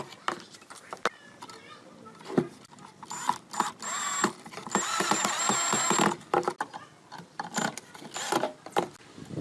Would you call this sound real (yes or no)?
yes